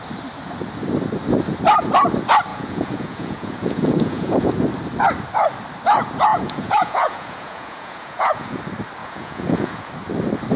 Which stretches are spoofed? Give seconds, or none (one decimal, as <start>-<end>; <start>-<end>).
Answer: 2.5-4.5; 6.3-8.6; 9.0-9.9